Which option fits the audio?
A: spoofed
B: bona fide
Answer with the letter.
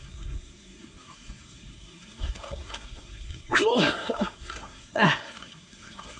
A